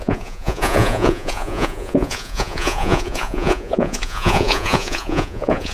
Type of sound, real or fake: fake